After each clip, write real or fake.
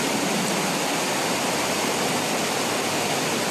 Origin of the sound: real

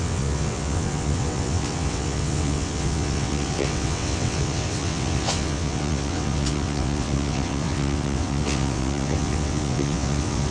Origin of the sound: fake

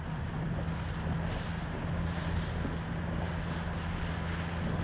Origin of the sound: real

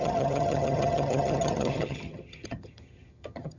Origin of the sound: fake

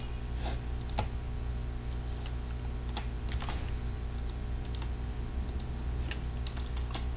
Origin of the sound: real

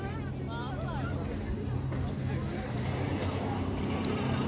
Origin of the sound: real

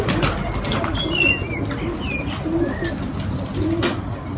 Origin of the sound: real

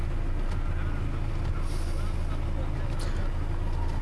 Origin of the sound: real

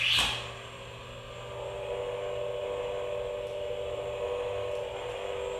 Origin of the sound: real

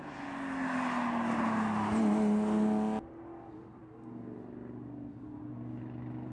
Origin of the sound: real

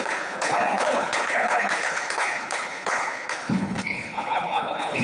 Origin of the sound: fake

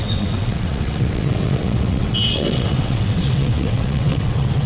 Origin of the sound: fake